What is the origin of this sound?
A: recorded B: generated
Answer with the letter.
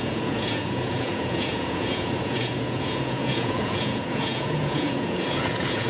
B